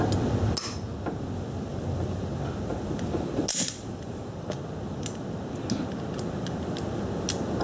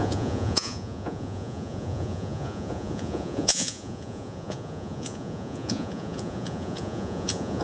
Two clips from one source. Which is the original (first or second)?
first